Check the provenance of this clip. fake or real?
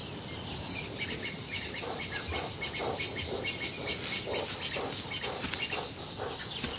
real